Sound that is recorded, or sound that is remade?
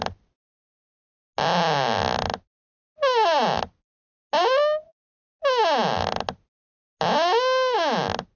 recorded